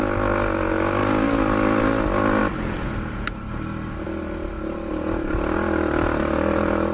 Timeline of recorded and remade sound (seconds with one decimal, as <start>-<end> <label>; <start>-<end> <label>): 0.0-6.9 recorded